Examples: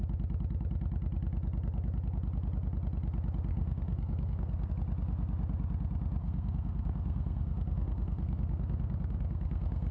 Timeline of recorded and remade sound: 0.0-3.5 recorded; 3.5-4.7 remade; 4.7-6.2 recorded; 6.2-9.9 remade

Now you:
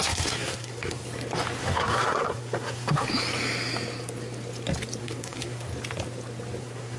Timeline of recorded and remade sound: 0.0-1.0 remade; 1.0-1.6 recorded; 1.6-3.1 remade; 3.1-5.0 recorded; 5.0-5.7 remade; 5.7-6.6 recorded; 6.6-7.0 remade

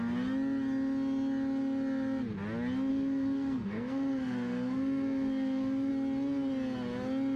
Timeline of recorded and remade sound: 0.0-2.9 recorded; 2.9-5.9 remade; 5.9-7.4 recorded

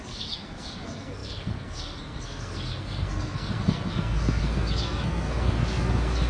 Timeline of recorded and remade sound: 0.0-6.3 remade

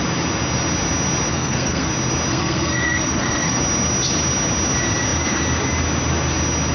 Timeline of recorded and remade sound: 0.0-1.3 recorded; 1.3-1.9 remade; 1.9-2.3 recorded; 2.3-3.6 remade; 3.6-6.7 recorded

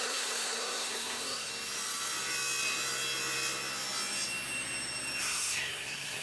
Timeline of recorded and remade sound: 0.0-1.5 remade; 1.5-5.2 recorded; 5.2-6.2 remade

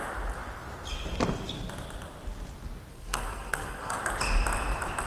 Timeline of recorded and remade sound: 0.0-2.9 recorded; 2.9-4.0 remade; 4.0-5.1 recorded

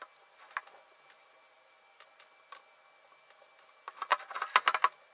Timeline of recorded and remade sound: 0.0-5.1 recorded